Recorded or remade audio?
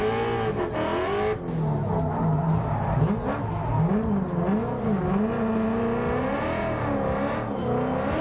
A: recorded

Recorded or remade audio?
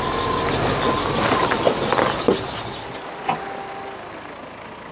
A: recorded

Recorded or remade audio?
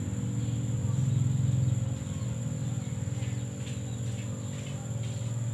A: recorded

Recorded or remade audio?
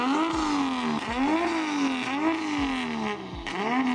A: recorded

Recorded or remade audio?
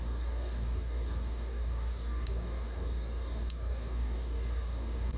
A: remade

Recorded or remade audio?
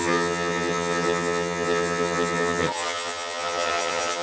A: remade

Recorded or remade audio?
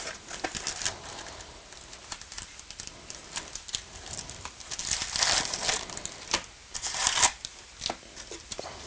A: recorded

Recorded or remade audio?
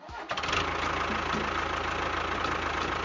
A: recorded